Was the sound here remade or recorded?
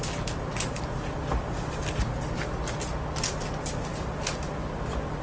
recorded